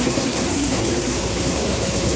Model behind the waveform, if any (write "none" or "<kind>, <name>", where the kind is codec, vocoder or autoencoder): codec, SNAC